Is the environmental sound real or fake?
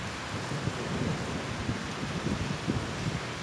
real